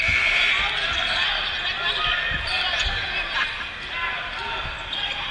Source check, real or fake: real